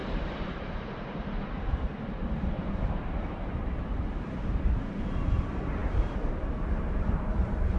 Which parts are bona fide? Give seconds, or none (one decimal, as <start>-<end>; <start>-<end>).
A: none